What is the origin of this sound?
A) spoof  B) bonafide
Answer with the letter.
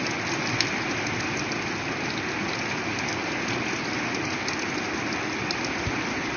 B